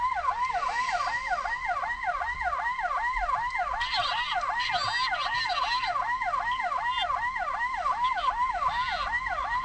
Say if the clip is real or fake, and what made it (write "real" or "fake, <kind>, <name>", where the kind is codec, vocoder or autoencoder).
real